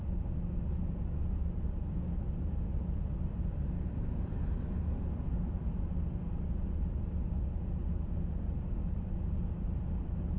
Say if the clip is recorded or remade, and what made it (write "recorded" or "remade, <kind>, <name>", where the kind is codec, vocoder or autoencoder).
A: recorded